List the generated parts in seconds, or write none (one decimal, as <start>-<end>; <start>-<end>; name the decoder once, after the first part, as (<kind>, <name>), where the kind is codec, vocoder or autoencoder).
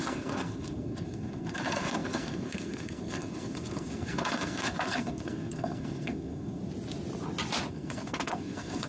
0.0-6.6 (codec, SNAC); 7.7-8.9